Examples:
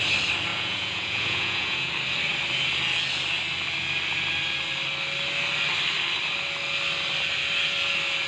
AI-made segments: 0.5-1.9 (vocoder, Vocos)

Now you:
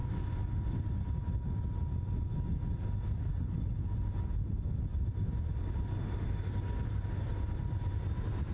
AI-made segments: none

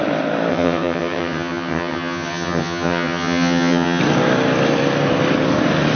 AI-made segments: 0.5-4.0 (vocoder, HiFi-GAN)

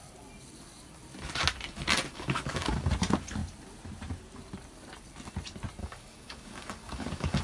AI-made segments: 2.1-2.9 (codec, DAC); 5.8-7.4